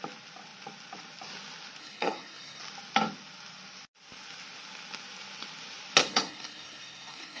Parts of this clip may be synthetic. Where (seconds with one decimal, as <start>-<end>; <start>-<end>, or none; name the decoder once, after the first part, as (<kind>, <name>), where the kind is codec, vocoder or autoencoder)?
1.8-2.6 (codec, SNAC); 6.0-7.4